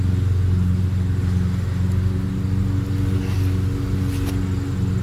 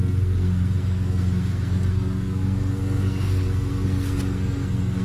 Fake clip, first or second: second